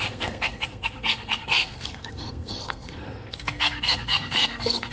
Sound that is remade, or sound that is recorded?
remade